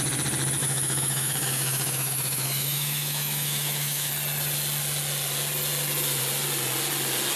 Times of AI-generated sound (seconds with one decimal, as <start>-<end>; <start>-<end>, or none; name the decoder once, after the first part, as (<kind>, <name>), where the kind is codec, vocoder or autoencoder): 0.6-4.1 (autoencoder, DAC-VAE)